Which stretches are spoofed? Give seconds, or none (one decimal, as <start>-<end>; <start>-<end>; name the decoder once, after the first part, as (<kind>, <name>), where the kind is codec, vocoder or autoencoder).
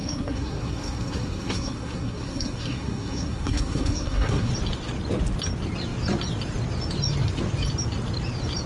0.0-4.5 (codec, SNAC)